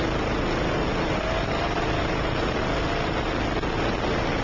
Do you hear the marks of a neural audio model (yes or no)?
no